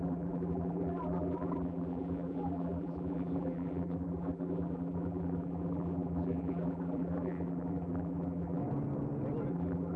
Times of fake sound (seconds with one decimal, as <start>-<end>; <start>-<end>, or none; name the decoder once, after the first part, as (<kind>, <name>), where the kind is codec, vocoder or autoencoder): 0.0-8.6 (vocoder, BigVGAN v2); 9.5-10.0